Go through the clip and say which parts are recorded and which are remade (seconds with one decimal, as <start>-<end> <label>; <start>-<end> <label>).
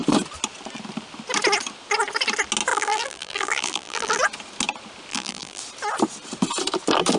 0.0-2.7 recorded; 2.7-4.2 remade; 4.2-5.1 recorded; 5.1-5.6 remade; 5.6-7.2 recorded